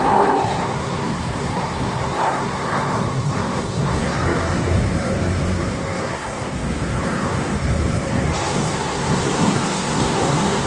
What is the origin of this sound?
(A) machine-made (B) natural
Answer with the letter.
A